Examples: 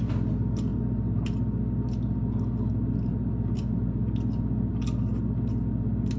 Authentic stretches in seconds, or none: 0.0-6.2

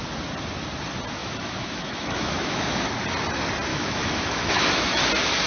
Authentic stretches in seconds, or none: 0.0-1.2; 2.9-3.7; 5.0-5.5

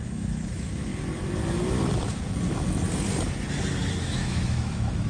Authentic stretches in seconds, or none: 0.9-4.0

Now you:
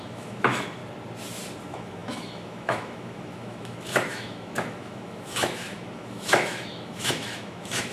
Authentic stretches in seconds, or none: 0.8-1.6

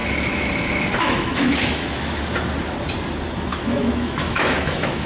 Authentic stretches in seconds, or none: 2.2-3.5

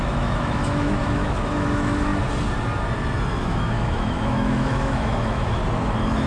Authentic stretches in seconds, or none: 2.1-3.4; 5.6-6.3